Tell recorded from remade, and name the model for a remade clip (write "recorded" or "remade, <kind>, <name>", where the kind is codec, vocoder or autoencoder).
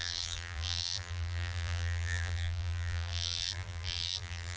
remade, vocoder, BigVGAN v2